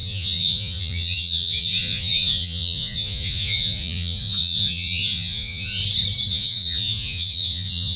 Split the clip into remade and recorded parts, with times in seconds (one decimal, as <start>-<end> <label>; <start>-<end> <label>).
0.0-5.8 remade; 5.8-6.3 recorded; 6.3-8.0 remade